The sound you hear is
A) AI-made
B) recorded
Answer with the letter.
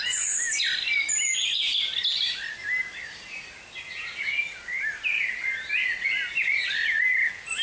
B